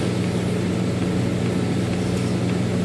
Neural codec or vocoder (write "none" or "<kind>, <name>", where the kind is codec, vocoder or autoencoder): none